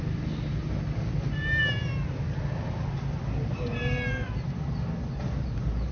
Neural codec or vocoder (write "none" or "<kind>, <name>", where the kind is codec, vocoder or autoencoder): none